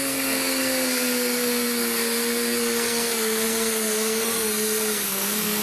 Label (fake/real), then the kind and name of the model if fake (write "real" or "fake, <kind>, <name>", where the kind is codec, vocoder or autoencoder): fake, codec, SNAC